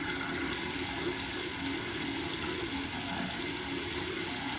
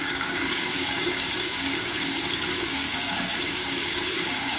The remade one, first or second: second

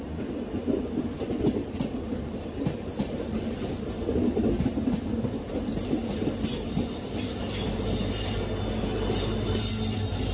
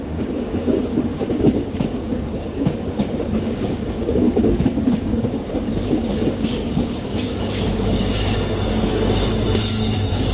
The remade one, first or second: second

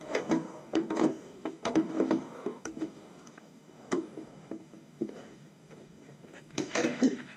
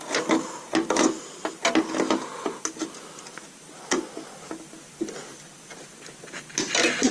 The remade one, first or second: first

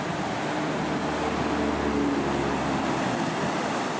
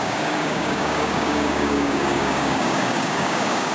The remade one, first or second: second